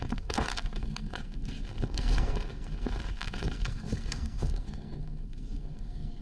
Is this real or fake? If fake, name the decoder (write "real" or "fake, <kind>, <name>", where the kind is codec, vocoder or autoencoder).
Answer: fake, codec, SNAC